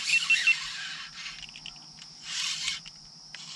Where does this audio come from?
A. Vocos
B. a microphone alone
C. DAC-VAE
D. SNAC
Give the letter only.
B